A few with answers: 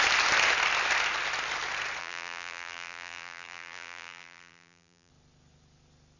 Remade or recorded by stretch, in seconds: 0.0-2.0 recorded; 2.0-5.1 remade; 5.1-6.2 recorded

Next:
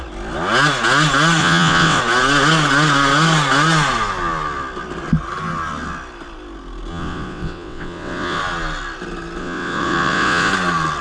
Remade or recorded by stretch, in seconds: 0.0-1.4 recorded; 1.4-2.0 remade; 2.0-6.9 recorded; 6.9-8.4 remade; 8.4-9.4 recorded; 9.4-10.5 remade; 10.5-11.0 recorded

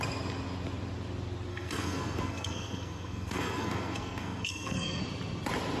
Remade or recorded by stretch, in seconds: 0.0-1.5 recorded; 1.5-5.0 remade; 5.0-5.8 recorded

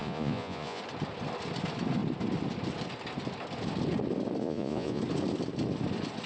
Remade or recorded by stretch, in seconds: 0.0-0.8 remade; 0.8-4.4 recorded; 4.4-5.0 remade; 5.0-6.3 recorded

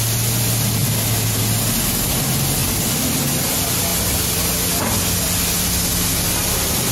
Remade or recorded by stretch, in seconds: 0.0-6.9 recorded